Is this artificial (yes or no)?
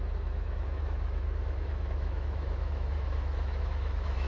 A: yes